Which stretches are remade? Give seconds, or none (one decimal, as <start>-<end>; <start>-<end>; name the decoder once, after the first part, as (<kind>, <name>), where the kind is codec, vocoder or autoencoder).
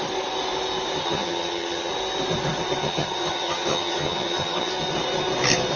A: 1.0-1.9 (vocoder, HiFi-GAN); 2.8-4.7